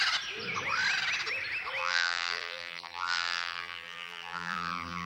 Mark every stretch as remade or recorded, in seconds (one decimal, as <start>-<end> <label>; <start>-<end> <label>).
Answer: 0.0-1.8 recorded; 1.8-5.1 remade